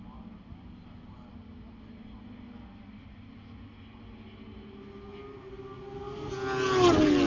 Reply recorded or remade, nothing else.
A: recorded